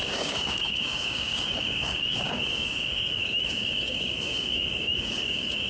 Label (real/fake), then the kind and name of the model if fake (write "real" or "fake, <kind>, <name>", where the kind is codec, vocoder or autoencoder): fake, codec, DAC